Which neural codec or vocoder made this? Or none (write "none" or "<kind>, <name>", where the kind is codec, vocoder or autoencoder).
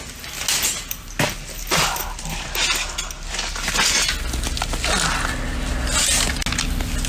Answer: none